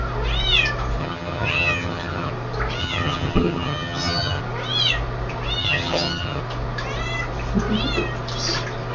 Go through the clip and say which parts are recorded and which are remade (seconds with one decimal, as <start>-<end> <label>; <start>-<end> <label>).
0.0-1.0 recorded; 1.0-2.3 remade; 2.3-2.8 recorded; 2.8-4.4 remade; 4.4-5.6 recorded; 5.6-6.4 remade; 6.4-8.9 recorded